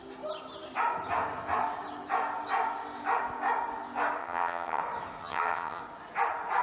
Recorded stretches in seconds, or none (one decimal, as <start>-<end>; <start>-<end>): 0.0-4.2; 4.8-5.2; 5.8-6.6